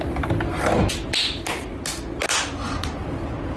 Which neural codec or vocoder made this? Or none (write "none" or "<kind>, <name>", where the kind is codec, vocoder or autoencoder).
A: none